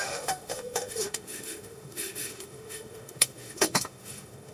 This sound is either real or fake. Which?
fake